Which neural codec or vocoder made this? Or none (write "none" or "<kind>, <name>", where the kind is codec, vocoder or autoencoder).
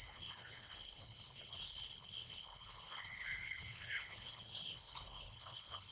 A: codec, HILCodec